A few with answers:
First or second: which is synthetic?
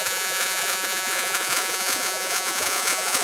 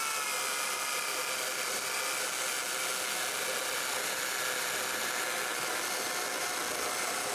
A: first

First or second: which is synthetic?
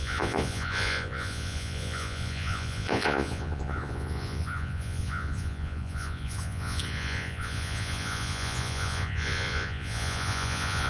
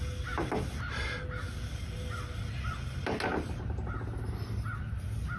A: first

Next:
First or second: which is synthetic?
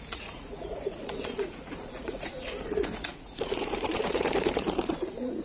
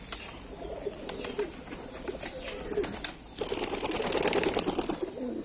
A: first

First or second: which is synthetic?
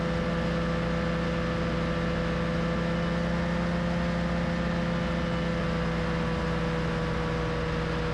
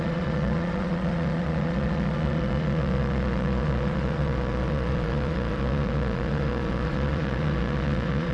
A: second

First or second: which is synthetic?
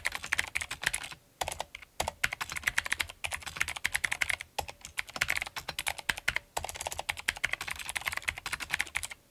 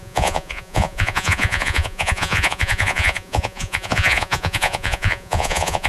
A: second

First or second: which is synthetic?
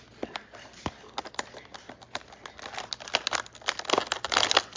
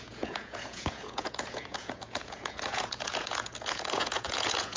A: second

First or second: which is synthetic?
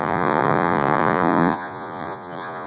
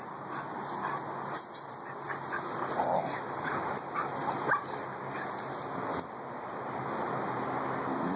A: first